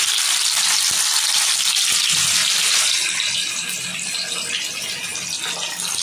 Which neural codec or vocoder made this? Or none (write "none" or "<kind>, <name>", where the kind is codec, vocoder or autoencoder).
none